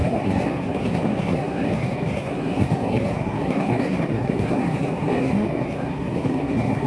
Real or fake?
fake